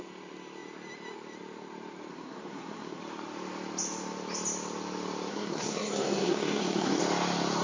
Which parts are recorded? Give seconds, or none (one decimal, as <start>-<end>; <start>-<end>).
0.0-2.1; 3.0-5.3; 7.0-7.6